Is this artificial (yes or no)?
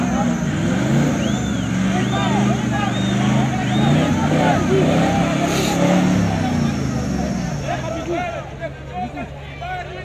no